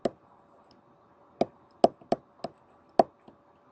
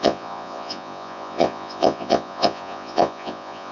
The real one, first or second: first